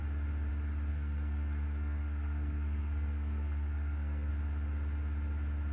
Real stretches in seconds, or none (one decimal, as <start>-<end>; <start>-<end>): 0.0-0.9; 4.3-5.7